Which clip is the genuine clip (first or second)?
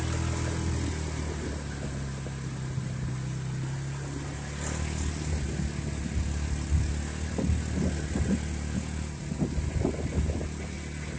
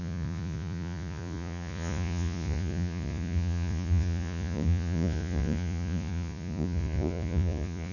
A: first